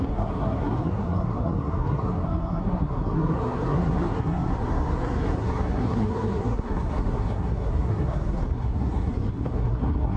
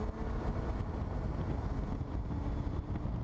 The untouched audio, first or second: second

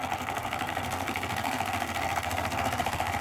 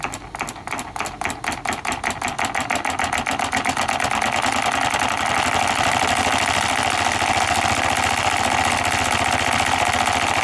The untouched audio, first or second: second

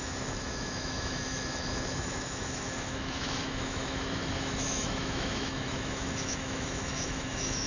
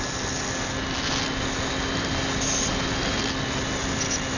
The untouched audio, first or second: second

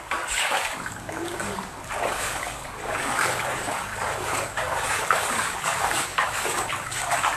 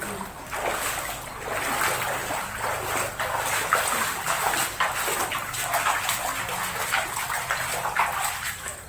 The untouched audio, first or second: second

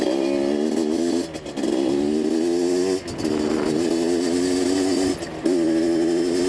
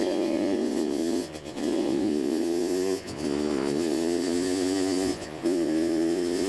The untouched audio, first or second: first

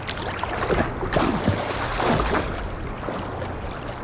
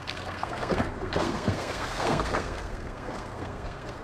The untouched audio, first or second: first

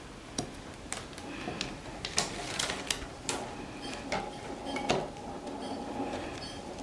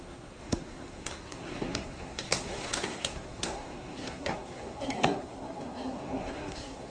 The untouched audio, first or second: first